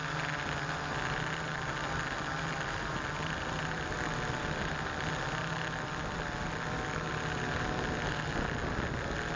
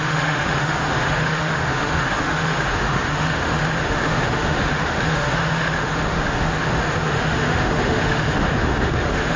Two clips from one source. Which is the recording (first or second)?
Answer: first